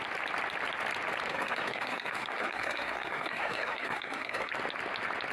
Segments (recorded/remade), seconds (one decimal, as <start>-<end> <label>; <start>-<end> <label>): 0.0-1.3 recorded; 1.3-4.5 remade; 4.5-5.3 recorded